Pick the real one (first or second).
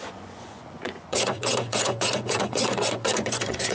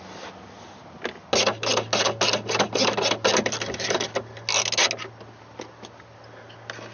second